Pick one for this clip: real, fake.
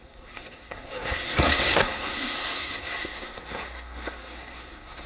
fake